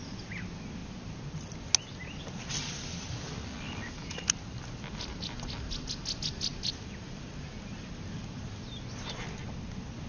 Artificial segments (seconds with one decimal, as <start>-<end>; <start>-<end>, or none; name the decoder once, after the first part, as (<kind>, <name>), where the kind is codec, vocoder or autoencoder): none